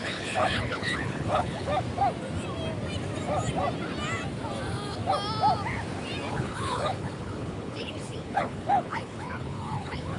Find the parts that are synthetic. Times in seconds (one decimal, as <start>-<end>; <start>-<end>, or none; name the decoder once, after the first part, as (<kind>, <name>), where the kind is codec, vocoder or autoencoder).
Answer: 0.0-1.7 (codec, HILCodec); 6.3-10.2